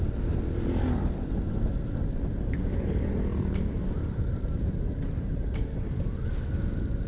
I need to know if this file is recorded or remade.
recorded